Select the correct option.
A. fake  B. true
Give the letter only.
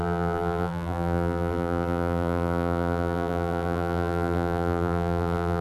A